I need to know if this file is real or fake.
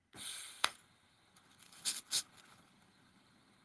fake